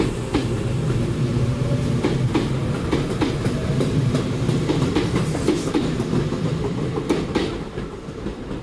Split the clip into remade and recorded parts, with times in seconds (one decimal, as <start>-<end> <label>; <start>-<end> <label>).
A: 0.0-1.3 recorded; 1.3-2.0 remade; 2.0-3.6 recorded; 3.6-4.7 remade; 4.7-8.6 recorded